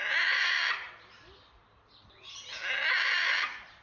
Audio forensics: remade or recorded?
recorded